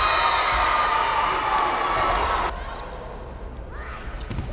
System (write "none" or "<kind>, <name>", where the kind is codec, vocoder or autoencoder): none